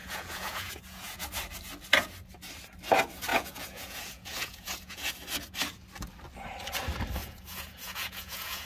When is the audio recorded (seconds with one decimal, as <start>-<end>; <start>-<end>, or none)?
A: 1.2-3.3; 5.1-7.2